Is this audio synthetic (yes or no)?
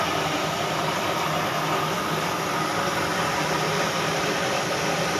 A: no